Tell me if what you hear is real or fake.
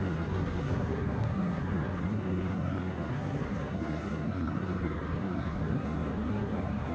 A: fake